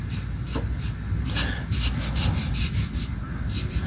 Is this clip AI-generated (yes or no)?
no